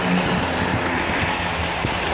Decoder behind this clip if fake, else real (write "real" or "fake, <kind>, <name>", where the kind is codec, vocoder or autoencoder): real